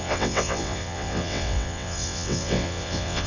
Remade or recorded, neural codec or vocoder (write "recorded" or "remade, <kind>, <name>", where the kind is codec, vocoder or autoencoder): remade, vocoder, WaveNeXt